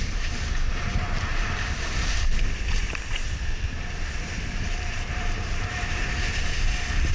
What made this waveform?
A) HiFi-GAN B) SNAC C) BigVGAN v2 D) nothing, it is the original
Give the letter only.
C